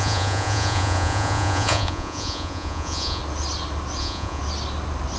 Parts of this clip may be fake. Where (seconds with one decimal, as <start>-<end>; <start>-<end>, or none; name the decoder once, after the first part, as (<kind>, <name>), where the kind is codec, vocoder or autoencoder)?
0.0-3.2 (vocoder, Vocos); 4.0-4.4

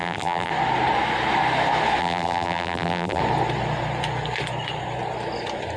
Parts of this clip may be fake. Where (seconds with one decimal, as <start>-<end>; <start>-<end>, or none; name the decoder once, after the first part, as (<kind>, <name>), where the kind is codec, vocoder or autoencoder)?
0.0-0.5 (vocoder, BigVGAN v2); 2.0-3.2